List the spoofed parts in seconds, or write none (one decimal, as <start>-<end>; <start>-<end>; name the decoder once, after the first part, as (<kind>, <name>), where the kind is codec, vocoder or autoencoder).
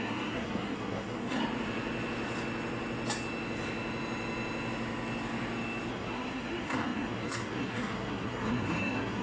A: 0.0-1.4 (codec, SNAC); 5.9-9.2